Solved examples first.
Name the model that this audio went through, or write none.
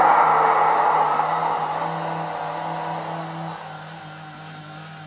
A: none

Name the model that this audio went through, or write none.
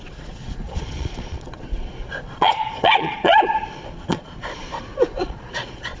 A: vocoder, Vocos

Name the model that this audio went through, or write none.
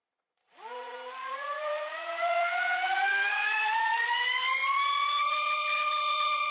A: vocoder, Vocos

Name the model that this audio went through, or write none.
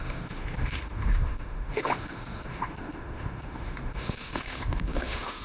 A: autoencoder, DAC-VAE